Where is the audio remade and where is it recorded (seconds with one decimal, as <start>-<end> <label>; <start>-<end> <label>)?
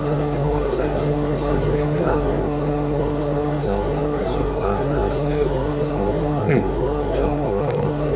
0.0-8.2 remade